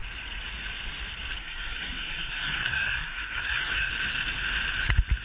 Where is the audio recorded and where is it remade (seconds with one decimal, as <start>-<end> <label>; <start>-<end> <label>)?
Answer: 0.0-1.4 recorded; 1.4-3.9 remade; 3.9-5.2 recorded